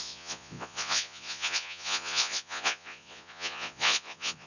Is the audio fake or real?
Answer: fake